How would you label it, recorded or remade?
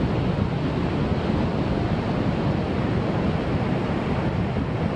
recorded